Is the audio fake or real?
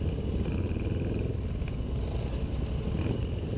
real